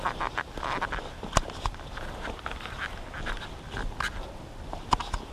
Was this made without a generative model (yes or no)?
yes